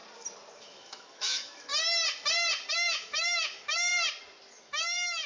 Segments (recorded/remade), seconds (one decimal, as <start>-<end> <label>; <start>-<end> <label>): 0.0-0.6 recorded; 0.6-1.7 remade; 1.7-2.7 recorded; 2.7-3.9 remade; 3.9-4.6 recorded; 4.6-5.3 remade